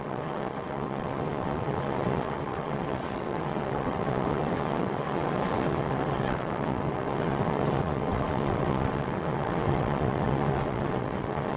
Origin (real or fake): fake